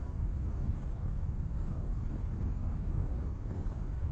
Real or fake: fake